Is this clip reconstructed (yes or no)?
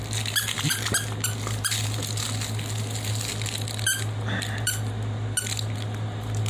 no